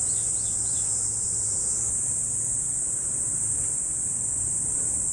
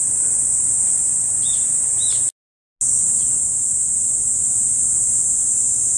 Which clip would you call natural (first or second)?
second